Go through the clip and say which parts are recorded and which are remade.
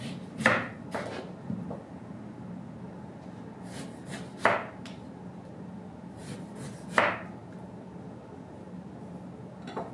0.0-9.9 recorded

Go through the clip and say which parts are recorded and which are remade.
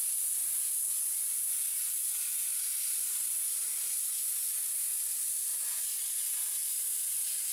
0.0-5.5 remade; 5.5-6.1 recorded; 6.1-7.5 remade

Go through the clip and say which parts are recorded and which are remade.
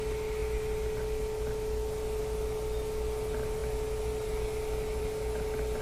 0.0-5.8 recorded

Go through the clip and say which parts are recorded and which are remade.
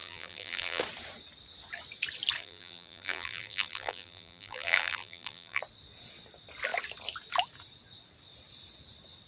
0.0-0.8 remade; 0.8-2.4 recorded; 2.4-5.6 remade; 5.6-9.3 recorded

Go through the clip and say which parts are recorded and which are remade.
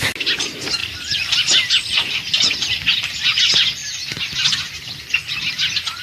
0.0-6.0 recorded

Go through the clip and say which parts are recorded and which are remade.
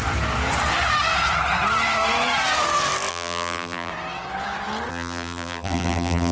0.0-3.1 recorded; 3.1-3.9 remade; 3.9-4.9 recorded; 4.9-6.3 remade